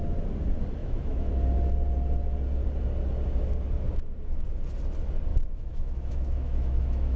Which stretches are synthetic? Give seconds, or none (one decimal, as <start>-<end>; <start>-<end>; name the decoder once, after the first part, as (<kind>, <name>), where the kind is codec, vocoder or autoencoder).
0.8-1.3 (autoencoder, DAC-VAE); 5.3-7.2